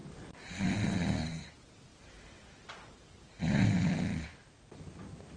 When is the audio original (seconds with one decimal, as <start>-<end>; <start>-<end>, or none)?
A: 0.0-5.4